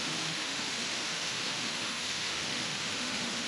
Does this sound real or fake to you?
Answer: fake